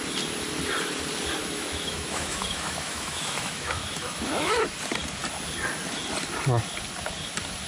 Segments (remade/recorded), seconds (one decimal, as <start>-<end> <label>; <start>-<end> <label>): 0.0-1.4 recorded; 1.4-4.5 remade; 4.5-7.7 recorded